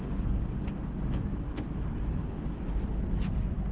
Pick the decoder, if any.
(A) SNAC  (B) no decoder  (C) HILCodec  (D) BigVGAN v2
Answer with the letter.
B